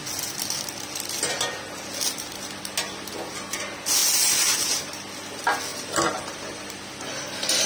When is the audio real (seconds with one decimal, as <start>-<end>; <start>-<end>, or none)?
0.0-5.7; 6.9-7.7